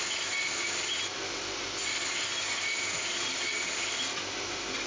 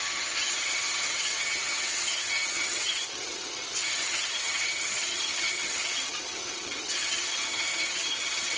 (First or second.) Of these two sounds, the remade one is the second